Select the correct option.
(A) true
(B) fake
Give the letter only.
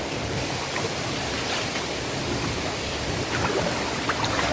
A